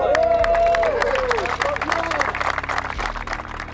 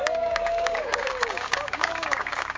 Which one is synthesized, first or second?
second